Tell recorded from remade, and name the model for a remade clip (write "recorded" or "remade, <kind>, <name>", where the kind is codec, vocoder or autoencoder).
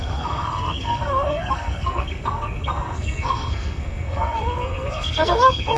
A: remade, codec, SNAC